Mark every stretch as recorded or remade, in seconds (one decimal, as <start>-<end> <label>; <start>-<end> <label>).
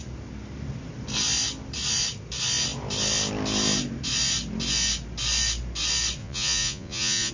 0.0-6.2 recorded; 6.2-7.3 remade